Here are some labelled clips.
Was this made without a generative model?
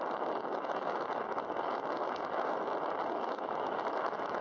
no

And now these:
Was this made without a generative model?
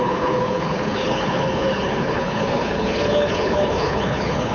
no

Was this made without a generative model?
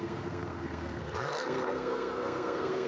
no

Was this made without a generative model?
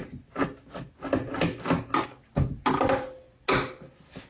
yes